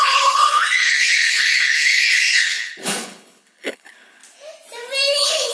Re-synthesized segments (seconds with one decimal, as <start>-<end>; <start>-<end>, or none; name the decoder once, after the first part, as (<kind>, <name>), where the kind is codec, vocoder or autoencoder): 0.0-4.2 (codec, HILCodec); 5.1-5.5